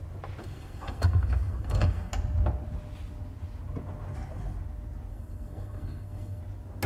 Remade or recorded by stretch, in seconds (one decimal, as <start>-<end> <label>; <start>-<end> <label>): 0.0-0.4 recorded; 0.4-2.1 remade; 2.1-5.1 recorded; 5.1-6.4 remade; 6.4-6.9 recorded